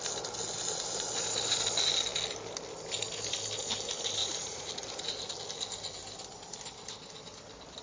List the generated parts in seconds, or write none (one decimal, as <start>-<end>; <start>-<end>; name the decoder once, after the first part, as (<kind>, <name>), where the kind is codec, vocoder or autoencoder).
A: 4.2-4.7 (vocoder, Vocos)